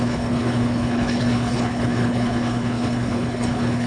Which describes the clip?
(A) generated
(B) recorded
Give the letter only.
A